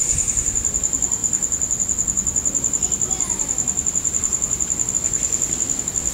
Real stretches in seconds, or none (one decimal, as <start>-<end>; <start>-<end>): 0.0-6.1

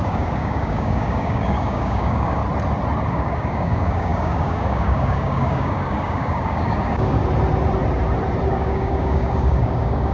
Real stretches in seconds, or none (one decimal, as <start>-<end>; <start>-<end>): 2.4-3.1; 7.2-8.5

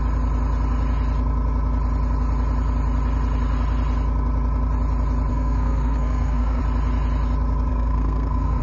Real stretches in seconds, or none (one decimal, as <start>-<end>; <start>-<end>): 0.0-5.3; 6.6-7.7